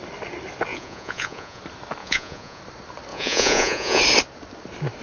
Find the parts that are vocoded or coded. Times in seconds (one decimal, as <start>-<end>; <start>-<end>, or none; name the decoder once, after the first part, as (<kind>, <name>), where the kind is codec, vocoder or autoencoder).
0.7-1.6 (vocoder, Vocos); 2.0-2.6; 3.1-4.0